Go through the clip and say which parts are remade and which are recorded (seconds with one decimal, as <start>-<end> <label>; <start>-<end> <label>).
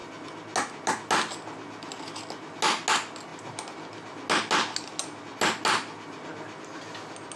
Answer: 0.0-7.4 recorded